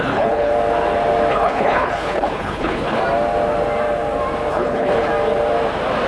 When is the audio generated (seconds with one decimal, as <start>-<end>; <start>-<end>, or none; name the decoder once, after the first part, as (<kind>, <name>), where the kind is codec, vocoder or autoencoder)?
0.0-0.5 (codec, HILCodec); 1.3-3.0; 4.5-5.1